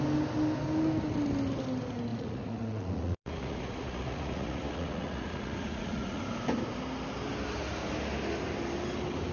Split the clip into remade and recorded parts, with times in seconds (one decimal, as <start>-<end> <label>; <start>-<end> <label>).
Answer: 0.0-2.1 recorded; 2.1-6.2 remade; 6.2-9.3 recorded